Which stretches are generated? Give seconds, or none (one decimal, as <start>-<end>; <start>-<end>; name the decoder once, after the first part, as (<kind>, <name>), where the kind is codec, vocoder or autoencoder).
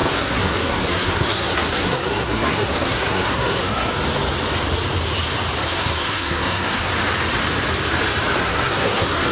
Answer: 0.0-3.9 (codec, SNAC); 5.6-6.9; 8.4-9.3